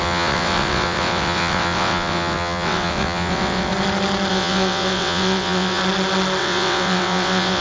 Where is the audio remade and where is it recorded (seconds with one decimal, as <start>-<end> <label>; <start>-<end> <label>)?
0.0-3.7 remade; 3.7-4.3 recorded; 4.3-5.8 remade; 5.8-6.4 recorded; 6.4-7.6 remade